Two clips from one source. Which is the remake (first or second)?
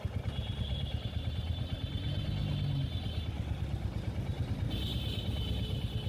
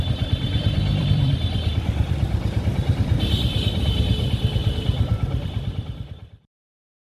second